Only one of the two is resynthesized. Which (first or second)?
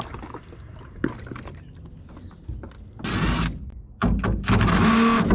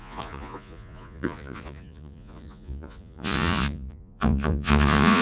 second